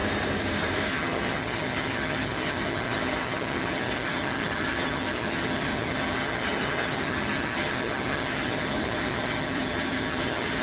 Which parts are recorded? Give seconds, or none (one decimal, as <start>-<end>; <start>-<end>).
0.0-0.9